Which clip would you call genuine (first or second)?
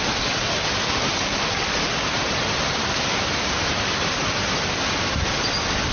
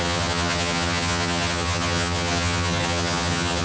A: first